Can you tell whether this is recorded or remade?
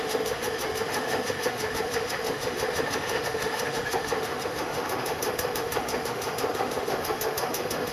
remade